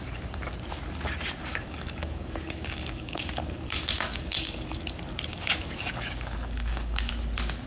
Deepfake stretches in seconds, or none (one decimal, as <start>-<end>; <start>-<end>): 1.5-4.8; 5.3-7.1

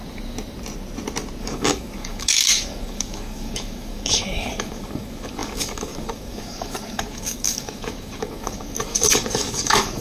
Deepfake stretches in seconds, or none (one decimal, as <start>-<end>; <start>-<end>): 1.4-10.0